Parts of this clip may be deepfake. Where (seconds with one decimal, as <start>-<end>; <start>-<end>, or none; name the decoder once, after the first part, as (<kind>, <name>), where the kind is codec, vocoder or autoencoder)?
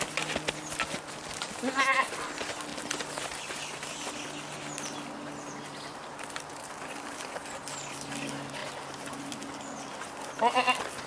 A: none